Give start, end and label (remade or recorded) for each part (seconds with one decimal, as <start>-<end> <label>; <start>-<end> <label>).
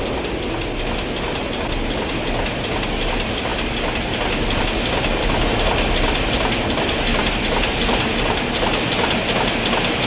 0.0-10.1 recorded